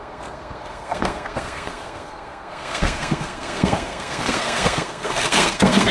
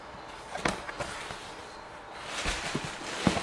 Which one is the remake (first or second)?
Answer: first